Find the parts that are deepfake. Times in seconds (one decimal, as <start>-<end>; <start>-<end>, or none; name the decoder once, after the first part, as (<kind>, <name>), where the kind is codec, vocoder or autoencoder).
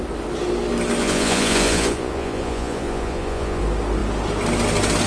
1.0-3.6 (vocoder, Vocos)